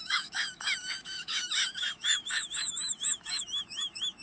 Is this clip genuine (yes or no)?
no